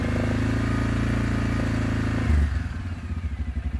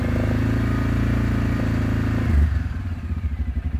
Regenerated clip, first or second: second